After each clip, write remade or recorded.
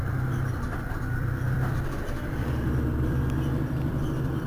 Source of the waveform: remade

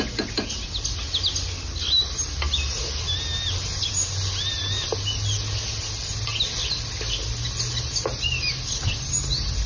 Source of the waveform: recorded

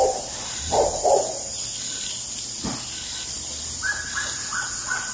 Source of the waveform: recorded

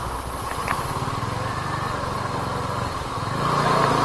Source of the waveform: recorded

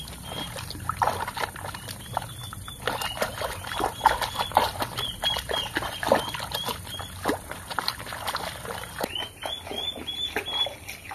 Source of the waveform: recorded